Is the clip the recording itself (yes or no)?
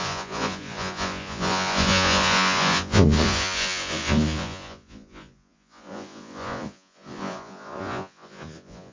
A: no